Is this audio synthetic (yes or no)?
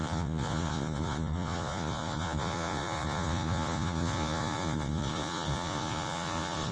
yes